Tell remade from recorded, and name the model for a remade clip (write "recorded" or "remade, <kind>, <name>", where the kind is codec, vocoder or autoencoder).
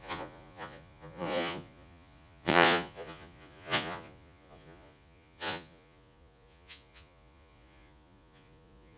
remade, vocoder, Vocos